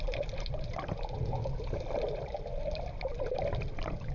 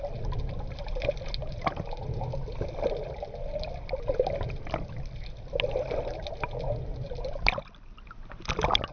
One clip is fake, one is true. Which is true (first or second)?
second